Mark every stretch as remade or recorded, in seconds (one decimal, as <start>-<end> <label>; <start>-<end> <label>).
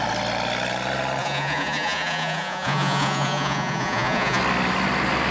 0.0-1.2 recorded; 1.2-4.4 remade; 4.4-5.3 recorded